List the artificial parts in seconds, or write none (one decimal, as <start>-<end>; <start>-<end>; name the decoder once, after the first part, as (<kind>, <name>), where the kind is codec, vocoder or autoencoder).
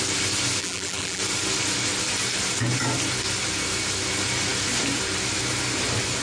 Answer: 0.6-1.2 (vocoder, BigVGAN v2)